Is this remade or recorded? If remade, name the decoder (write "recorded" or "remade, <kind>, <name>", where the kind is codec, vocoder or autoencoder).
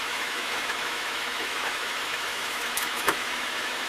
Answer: remade, autoencoder, DAC-VAE